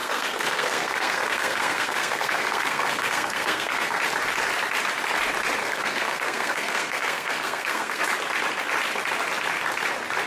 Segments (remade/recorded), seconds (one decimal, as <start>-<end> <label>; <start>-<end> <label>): 0.0-4.0 remade; 4.0-5.6 recorded; 5.6-8.0 remade; 8.0-10.3 recorded